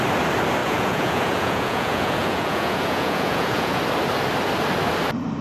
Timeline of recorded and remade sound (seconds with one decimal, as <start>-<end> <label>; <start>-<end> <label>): 0.0-0.6 recorded; 0.6-3.8 remade; 3.8-5.4 recorded

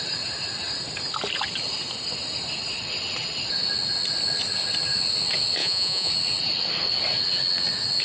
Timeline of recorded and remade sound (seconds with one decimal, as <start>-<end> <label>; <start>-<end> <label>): 0.0-5.6 recorded; 5.6-6.1 remade; 6.1-8.0 recorded